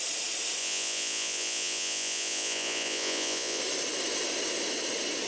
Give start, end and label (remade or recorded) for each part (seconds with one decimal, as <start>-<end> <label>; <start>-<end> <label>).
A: 0.0-0.6 recorded; 0.6-3.6 remade; 3.6-5.3 recorded